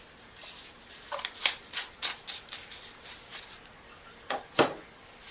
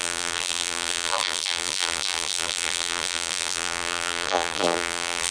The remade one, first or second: second